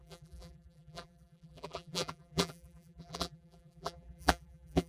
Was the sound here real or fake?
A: fake